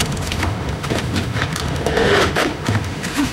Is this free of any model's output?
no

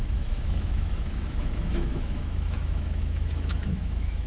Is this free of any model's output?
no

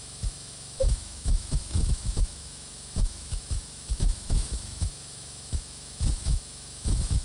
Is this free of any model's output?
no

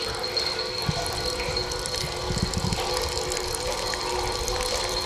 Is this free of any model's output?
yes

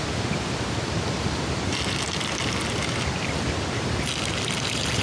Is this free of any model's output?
yes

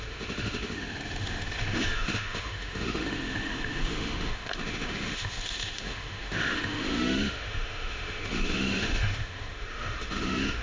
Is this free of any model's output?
no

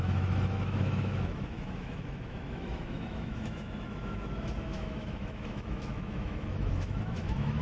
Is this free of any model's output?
no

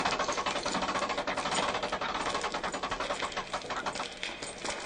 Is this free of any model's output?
yes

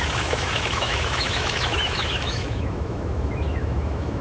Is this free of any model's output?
no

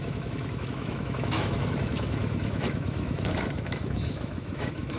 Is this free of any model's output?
no